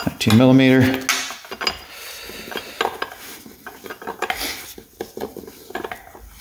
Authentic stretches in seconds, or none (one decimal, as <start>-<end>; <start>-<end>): 0.0-6.4